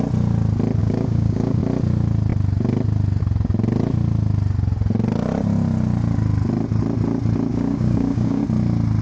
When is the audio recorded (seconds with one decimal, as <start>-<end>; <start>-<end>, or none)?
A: 0.0-0.8; 1.6-7.5; 8.4-9.0